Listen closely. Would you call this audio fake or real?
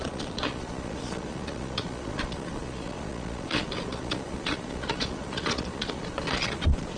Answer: fake